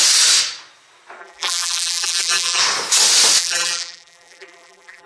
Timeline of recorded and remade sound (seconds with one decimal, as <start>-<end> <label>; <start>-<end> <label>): 0.0-1.2 recorded; 1.2-2.6 remade; 2.6-3.4 recorded; 3.4-5.1 remade